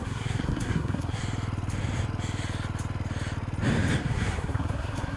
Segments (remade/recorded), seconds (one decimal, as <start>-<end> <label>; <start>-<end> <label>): 0.0-1.2 remade; 1.2-4.0 recorded; 4.0-5.2 remade